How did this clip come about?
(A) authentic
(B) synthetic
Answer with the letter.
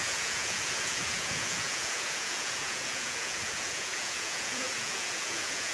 B